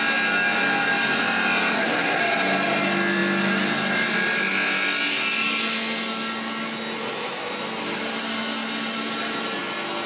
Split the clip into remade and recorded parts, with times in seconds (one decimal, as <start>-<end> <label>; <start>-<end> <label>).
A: 0.0-1.7 recorded; 1.7-2.2 remade; 2.2-10.1 recorded